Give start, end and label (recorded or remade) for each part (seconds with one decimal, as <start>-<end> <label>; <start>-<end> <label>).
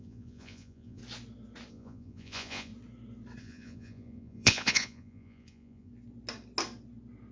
0.0-1.0 remade; 1.0-1.7 recorded; 1.7-2.7 remade; 2.7-3.4 recorded; 3.4-5.9 remade; 5.9-7.3 recorded